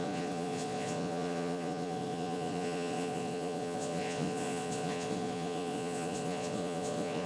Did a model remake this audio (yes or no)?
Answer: yes